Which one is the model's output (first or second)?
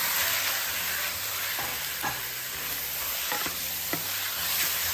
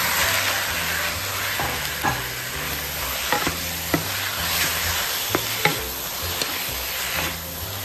first